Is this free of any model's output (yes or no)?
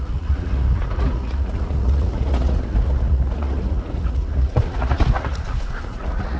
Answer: no